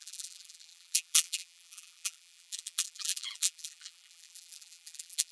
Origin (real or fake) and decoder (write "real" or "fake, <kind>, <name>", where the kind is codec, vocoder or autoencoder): fake, vocoder, BigVGAN v2